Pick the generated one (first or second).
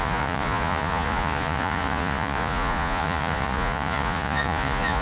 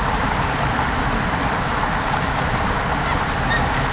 first